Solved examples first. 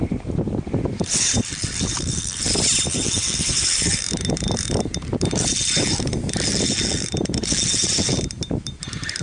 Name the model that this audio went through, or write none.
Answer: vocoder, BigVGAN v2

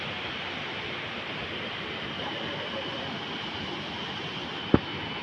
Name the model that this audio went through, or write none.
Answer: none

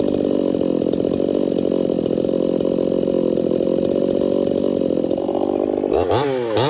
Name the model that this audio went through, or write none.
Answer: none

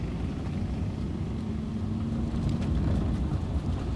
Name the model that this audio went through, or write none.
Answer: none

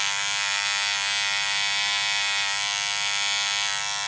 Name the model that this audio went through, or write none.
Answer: none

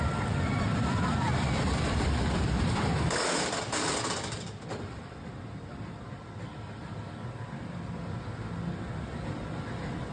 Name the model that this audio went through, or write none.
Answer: vocoder, BigVGAN v2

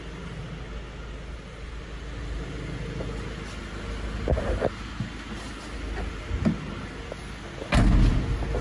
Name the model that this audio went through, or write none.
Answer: none